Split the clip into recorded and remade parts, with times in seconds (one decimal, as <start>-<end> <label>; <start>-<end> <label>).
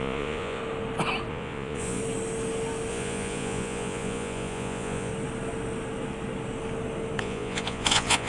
0.0-0.6 remade; 0.6-1.3 recorded; 1.3-2.0 remade; 2.0-2.9 recorded; 2.9-5.1 remade; 5.1-7.2 recorded; 7.2-8.3 remade